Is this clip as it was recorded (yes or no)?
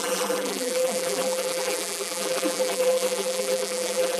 no